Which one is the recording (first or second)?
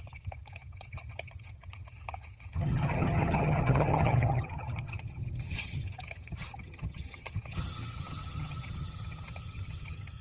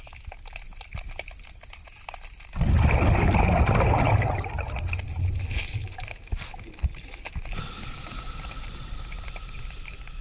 second